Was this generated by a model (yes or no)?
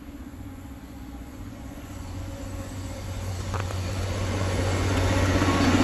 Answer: yes